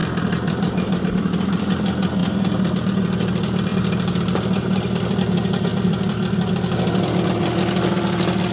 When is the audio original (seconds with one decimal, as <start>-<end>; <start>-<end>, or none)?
1.7-3.7; 4.2-5.7; 6.5-8.5

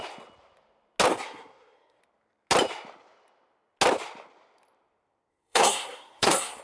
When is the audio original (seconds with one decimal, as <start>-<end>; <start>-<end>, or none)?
0.0-1.1; 2.0-5.3